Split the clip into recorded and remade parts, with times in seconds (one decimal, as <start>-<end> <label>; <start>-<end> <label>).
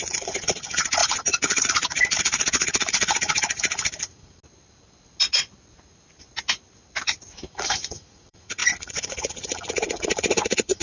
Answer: 0.0-4.4 remade; 4.4-7.5 recorded; 7.5-10.8 remade